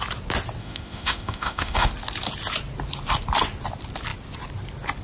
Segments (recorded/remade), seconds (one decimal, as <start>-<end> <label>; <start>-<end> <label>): 0.0-0.6 recorded; 0.6-1.9 remade; 1.9-5.0 recorded